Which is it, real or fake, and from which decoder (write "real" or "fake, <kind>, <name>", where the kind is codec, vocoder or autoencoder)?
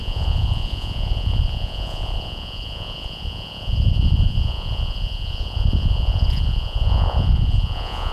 fake, vocoder, Vocos